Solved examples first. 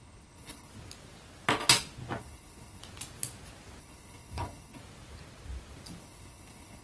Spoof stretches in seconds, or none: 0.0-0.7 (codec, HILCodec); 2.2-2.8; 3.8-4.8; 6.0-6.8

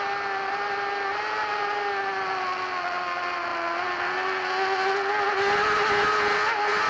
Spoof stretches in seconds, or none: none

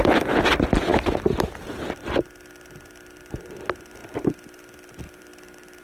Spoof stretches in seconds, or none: none

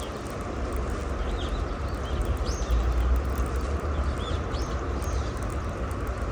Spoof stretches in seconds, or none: none